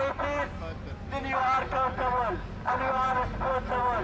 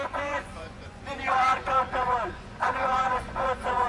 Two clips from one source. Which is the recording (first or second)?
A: first